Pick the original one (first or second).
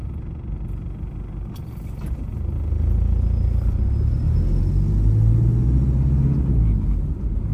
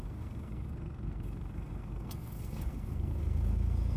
first